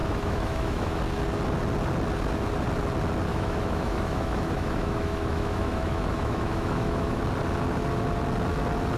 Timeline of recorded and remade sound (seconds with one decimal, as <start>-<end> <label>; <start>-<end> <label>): 0.0-1.0 remade; 1.0-3.3 recorded; 3.3-7.2 remade; 7.2-9.0 recorded